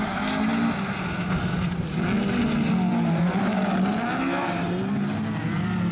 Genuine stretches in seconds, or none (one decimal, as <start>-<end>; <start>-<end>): 0.0-5.9